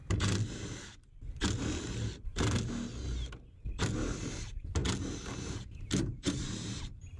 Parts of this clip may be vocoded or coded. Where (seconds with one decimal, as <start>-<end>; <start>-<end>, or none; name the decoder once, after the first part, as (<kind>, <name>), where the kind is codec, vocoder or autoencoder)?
4.3-4.8 (vocoder, BigVGAN v2); 5.4-7.2